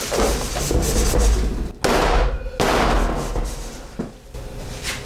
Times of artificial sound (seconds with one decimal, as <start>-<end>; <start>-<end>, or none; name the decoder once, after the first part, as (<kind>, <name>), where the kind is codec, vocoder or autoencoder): none